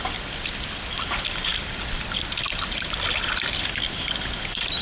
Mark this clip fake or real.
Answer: real